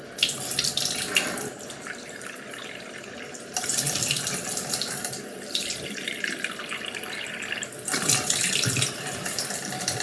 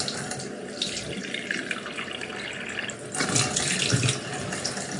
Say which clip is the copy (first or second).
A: first